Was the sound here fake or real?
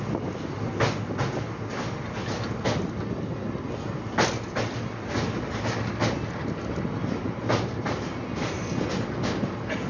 real